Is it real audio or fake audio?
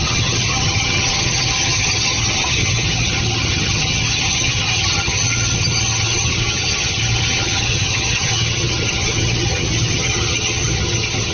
fake